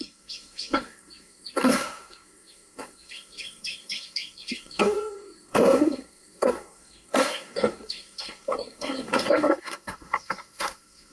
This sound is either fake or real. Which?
fake